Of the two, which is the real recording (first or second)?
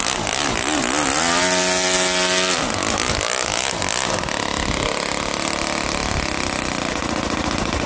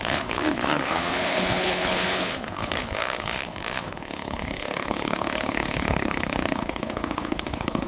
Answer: first